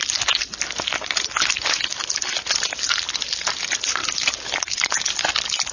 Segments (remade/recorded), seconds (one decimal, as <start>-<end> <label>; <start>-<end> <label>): 0.0-5.7 recorded